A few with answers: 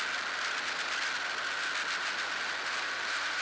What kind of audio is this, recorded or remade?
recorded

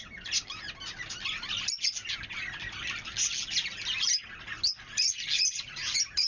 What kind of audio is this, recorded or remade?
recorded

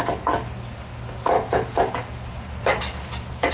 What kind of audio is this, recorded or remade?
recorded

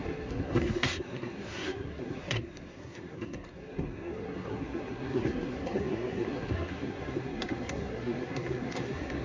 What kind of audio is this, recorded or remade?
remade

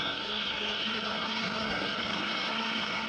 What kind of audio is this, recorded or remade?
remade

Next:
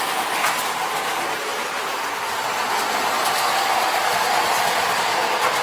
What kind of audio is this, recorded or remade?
recorded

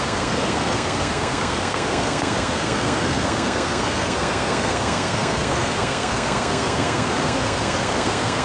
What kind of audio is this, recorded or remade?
remade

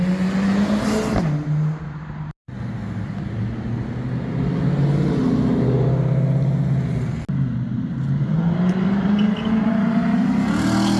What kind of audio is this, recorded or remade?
recorded